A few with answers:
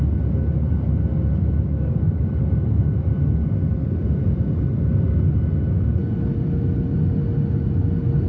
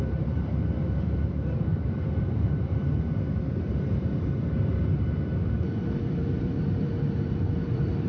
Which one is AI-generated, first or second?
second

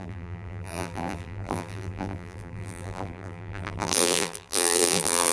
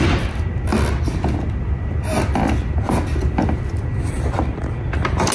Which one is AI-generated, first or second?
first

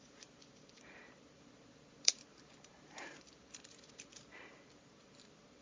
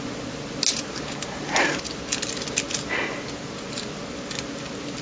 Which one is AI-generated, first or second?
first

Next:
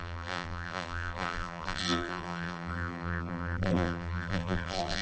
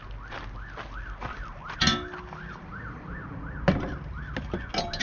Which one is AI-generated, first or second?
first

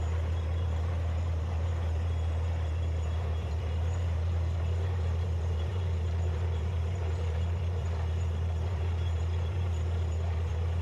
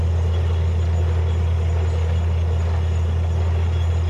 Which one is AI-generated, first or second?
first